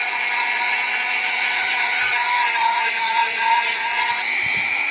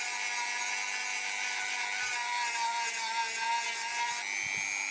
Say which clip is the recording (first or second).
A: second